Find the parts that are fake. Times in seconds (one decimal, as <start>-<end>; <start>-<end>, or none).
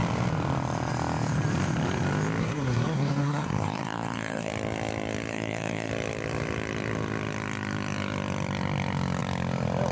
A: 2.4-4.5; 5.3-5.9